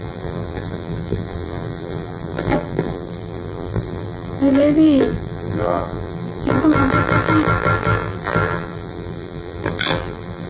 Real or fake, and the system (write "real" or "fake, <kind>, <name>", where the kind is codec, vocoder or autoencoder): fake, vocoder, BigVGAN v2